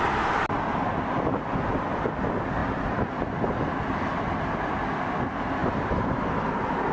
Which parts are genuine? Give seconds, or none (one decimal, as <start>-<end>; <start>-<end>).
0.0-2.6; 3.2-5.6; 6.4-6.9